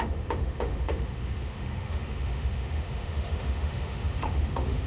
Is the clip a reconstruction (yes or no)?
yes